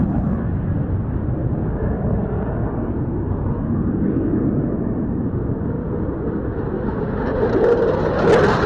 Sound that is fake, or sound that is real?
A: real